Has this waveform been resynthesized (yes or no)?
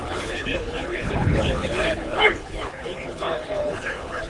yes